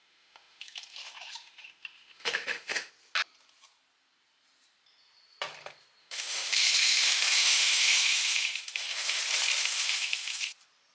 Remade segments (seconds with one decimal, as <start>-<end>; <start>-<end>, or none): 0.0-2.9; 6.0-9.2; 9.6-10.5